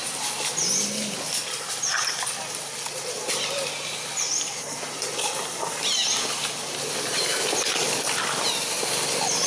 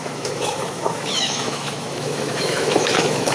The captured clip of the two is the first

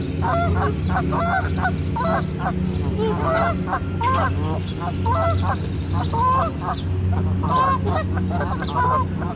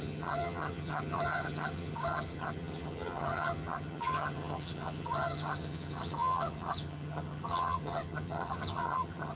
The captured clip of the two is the first